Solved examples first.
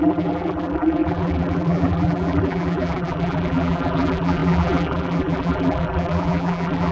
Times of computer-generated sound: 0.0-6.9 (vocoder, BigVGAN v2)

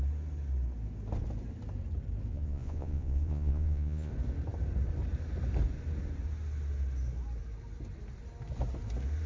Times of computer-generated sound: 2.3-4.1 (vocoder, Vocos)

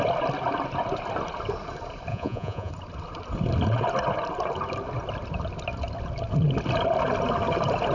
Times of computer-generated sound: 2.1-2.7 (vocoder, Vocos)